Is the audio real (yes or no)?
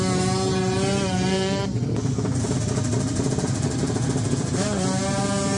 yes